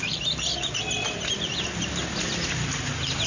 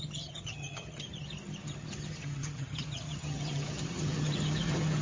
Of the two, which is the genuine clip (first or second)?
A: first